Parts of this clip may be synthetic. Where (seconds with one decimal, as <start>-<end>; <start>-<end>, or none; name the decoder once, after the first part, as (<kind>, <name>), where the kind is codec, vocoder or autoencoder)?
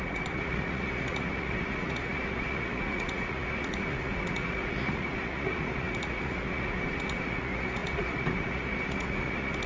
0.0-9.7 (vocoder, Vocos)